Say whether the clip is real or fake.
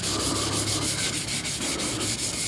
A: real